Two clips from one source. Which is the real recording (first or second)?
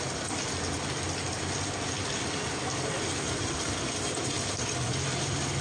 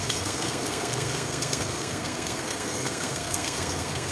first